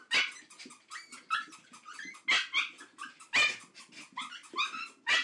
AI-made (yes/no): no